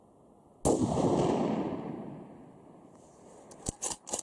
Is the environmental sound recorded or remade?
recorded